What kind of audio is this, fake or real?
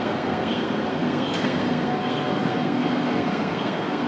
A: fake